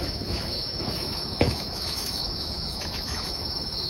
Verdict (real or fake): fake